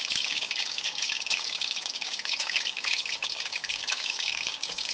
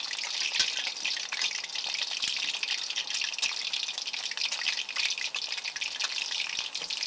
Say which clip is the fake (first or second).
first